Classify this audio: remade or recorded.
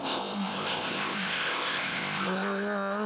remade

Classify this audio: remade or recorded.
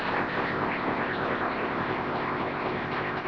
remade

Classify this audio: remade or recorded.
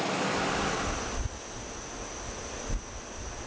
recorded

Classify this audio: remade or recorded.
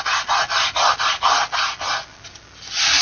recorded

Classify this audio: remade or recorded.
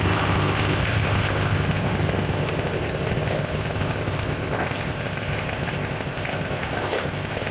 remade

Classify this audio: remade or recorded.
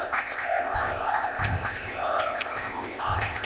remade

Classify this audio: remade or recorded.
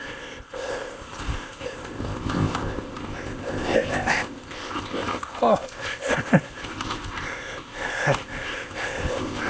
remade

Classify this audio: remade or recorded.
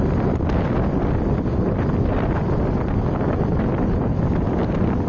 recorded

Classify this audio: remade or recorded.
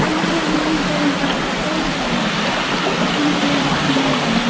recorded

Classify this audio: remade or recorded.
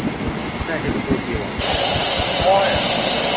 recorded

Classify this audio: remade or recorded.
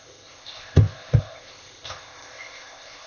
remade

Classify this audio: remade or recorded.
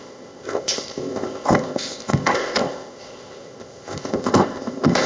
remade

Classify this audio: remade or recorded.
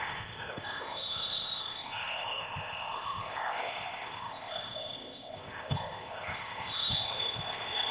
remade